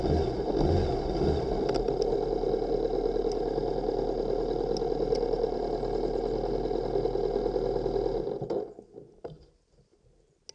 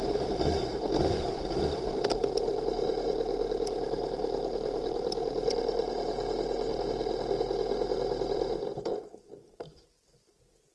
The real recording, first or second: first